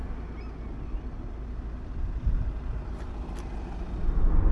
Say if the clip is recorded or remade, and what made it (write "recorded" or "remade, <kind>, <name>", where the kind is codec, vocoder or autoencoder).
recorded